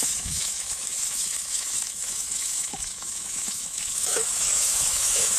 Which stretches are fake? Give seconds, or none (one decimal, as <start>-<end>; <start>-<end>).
0.0-5.4